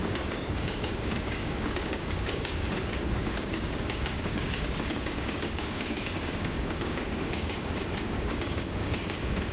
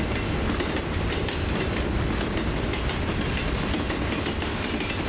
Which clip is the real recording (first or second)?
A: second